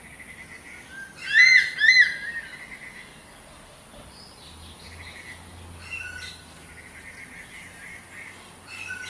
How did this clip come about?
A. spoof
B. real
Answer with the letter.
B